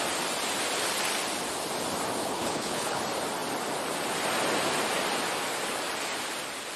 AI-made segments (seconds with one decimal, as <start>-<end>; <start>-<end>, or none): 2.2-3.0